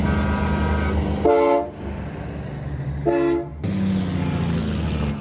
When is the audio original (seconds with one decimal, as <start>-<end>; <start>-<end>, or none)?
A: 0.0-5.2